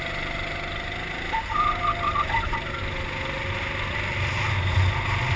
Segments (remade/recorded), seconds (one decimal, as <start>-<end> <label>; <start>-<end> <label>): 0.0-5.4 recorded